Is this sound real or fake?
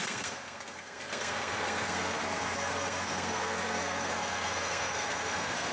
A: fake